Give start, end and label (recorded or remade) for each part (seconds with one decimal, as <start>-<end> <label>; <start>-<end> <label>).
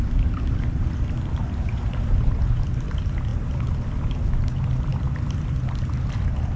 0.0-6.6 recorded